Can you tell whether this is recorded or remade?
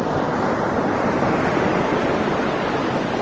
recorded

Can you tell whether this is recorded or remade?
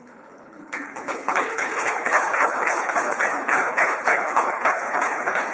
remade